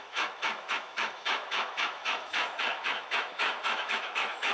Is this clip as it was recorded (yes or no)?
no